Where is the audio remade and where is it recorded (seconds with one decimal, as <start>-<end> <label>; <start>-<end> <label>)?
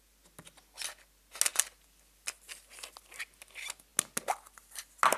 0.0-5.2 recorded